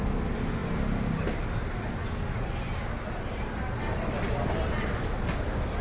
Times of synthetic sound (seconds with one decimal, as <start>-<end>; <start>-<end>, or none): none

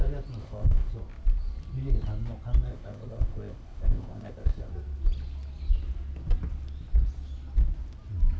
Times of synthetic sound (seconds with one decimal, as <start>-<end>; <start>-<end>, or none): 0.4-0.9; 2.7-4.7

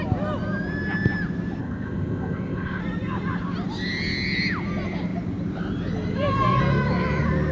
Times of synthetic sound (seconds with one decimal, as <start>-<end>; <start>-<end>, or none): 1.6-2.8

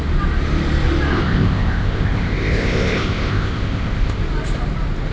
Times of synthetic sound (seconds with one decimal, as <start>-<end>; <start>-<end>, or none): 1.1-4.2

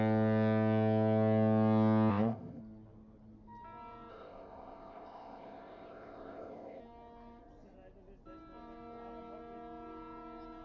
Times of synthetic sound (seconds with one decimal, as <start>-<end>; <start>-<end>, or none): 2.1-2.6; 4.1-6.8

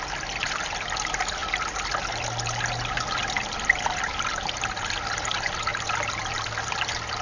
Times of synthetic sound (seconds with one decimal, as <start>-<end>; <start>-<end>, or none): none

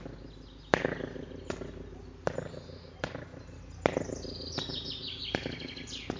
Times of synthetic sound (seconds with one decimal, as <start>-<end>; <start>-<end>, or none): none